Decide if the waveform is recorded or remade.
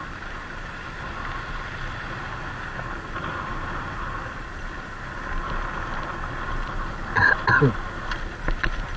recorded